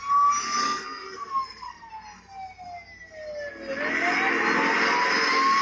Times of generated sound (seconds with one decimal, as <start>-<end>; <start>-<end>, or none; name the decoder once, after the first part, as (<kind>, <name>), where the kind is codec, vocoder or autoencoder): 0.6-1.9 (codec, SNAC)

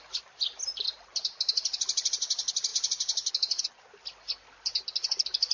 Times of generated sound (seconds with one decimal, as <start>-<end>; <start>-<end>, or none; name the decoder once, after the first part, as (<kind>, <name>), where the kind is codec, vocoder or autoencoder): none

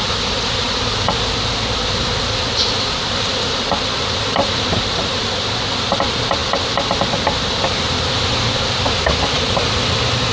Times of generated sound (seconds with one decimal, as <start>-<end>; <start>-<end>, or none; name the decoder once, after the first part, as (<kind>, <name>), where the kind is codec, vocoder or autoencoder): 0.0-6.4 (vocoder, BigVGAN v2); 8.3-10.3

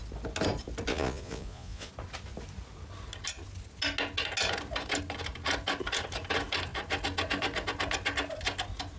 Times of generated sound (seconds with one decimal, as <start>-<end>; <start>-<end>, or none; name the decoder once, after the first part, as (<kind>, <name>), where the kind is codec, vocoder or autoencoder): 0.9-1.9 (vocoder, Vocos)